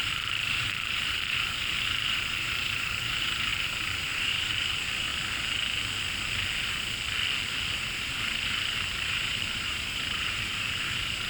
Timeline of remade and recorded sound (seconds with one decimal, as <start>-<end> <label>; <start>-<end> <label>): 0.0-5.1 remade; 5.1-7.8 recorded; 7.8-11.3 remade